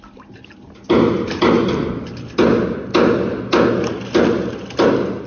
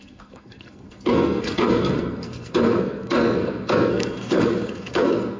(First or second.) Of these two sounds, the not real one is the second